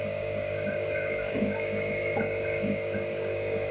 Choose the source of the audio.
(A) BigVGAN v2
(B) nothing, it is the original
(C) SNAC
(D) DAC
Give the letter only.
D